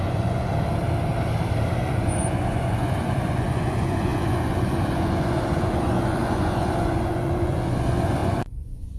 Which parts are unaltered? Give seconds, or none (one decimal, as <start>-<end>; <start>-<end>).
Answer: 0.5-1.8